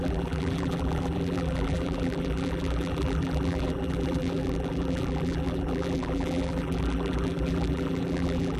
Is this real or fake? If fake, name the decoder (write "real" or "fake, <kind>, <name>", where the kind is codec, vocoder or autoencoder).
fake, vocoder, BigVGAN v2